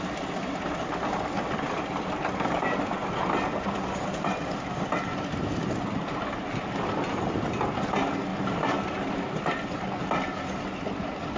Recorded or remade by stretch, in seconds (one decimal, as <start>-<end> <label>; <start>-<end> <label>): 0.0-11.4 recorded